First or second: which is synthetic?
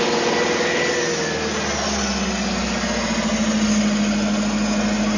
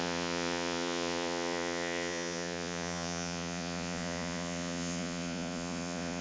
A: second